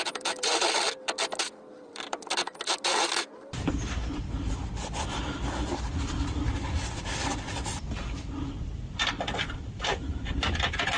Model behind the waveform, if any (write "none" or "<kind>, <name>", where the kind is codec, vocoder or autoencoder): vocoder, BigVGAN v2